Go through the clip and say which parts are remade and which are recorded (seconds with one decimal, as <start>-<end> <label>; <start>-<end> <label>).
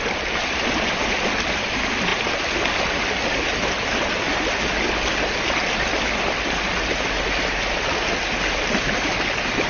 0.0-9.7 recorded